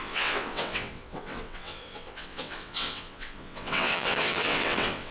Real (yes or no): no